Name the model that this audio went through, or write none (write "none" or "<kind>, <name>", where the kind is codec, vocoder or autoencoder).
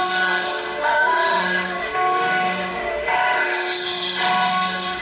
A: autoencoder, DAC-VAE